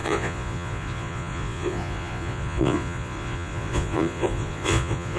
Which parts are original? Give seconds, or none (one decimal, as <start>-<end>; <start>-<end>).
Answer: none